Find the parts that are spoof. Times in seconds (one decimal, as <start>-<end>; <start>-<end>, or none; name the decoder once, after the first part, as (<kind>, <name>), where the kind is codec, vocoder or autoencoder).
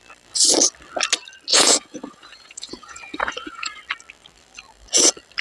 1.5-3.8 (vocoder, Vocos)